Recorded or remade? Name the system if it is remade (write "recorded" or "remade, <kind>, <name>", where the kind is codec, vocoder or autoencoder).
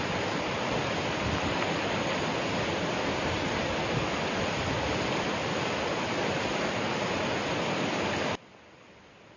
recorded